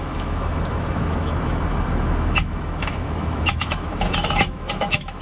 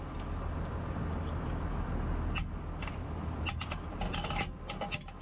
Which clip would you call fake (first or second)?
first